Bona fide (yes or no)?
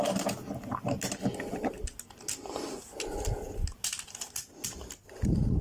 yes